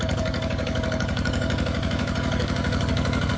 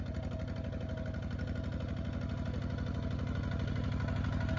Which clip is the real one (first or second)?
second